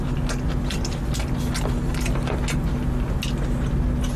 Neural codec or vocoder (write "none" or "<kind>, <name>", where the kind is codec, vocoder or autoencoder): none